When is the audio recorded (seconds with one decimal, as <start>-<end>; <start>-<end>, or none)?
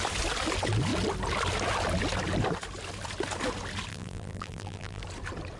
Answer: 0.0-3.9; 5.0-5.6